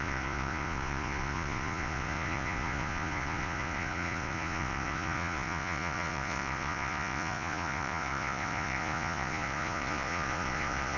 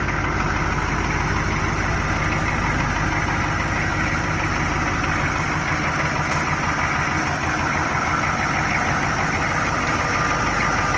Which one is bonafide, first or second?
second